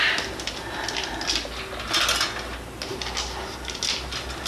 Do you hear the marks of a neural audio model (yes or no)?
no